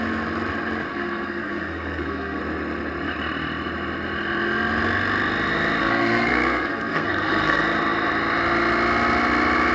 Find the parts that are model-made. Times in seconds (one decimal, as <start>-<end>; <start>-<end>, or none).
0.9-2.4; 5.8-7.6